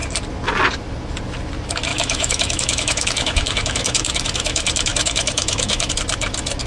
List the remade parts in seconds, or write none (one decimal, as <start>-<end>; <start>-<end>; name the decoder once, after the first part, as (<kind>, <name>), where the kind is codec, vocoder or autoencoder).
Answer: 1.9-5.9 (autoencoder, DAC-VAE)